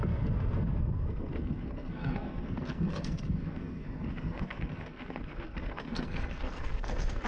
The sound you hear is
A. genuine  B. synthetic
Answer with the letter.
B